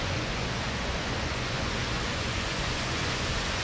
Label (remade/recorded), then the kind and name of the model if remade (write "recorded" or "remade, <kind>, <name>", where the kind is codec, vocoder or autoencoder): remade, vocoder, Vocos